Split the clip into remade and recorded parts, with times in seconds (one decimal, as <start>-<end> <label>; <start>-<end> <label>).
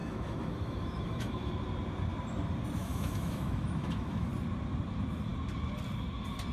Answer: 0.0-1.5 remade; 1.5-2.8 recorded; 2.8-4.3 remade; 4.3-6.5 recorded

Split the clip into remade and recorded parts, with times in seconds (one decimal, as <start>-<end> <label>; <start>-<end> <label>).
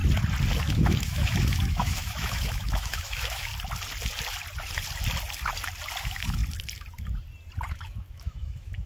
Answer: 0.0-0.6 recorded; 0.6-3.5 remade; 3.5-6.0 recorded; 6.0-6.4 remade; 6.4-7.7 recorded; 7.7-8.9 remade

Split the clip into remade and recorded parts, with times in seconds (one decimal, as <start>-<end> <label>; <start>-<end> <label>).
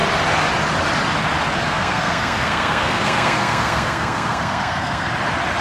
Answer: 0.0-1.7 recorded; 1.7-5.1 remade; 5.1-5.6 recorded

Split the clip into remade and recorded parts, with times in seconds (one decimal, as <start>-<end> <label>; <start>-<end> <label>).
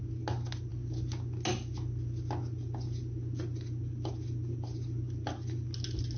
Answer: 0.0-6.2 recorded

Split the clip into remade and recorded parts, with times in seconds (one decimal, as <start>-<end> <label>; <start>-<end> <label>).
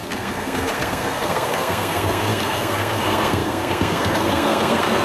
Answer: 0.0-5.0 remade